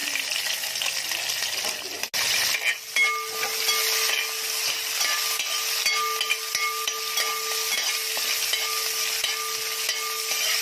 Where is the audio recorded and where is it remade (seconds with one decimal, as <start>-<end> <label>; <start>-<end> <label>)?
0.0-10.6 recorded